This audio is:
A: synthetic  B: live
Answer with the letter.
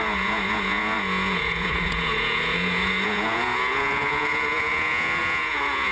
A